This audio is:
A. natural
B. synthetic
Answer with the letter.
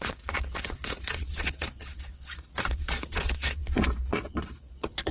B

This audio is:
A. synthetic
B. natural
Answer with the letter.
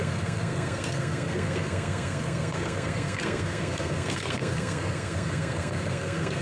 A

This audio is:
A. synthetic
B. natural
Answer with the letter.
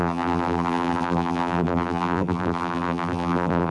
A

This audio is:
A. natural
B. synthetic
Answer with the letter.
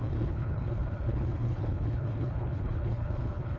B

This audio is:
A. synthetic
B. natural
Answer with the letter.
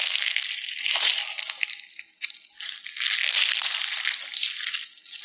B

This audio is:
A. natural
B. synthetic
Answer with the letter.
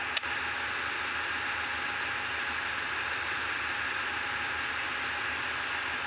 A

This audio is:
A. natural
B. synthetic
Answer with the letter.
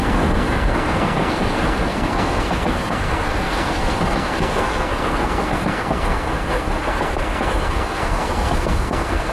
B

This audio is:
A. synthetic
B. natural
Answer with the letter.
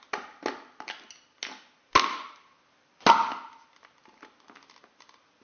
B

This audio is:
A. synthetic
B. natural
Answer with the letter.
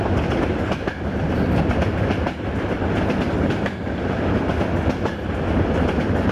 B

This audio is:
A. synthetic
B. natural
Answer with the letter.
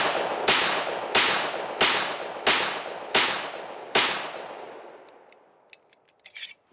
B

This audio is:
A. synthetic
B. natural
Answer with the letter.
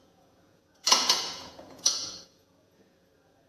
A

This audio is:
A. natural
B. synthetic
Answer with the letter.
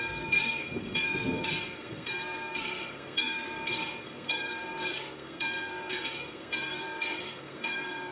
B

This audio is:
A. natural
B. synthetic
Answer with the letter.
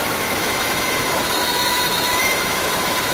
B